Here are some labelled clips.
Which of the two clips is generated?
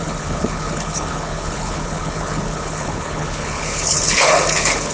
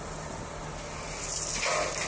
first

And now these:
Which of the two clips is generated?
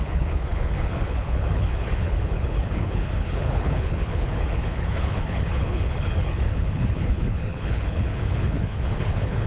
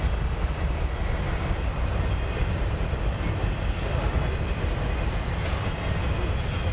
first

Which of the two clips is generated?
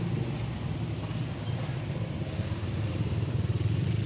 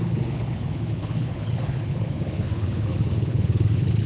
second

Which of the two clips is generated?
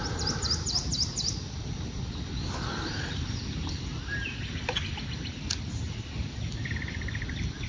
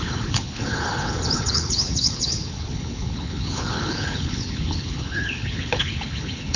second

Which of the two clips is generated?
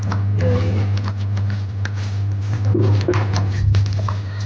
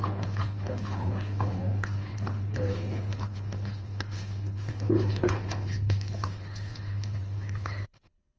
second